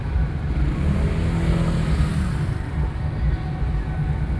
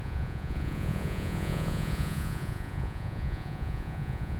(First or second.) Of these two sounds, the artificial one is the second